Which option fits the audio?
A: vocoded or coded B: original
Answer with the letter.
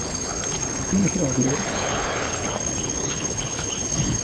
A